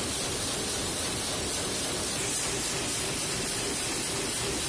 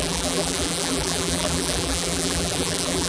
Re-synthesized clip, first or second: second